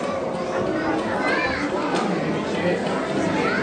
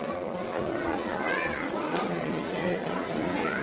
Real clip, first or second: first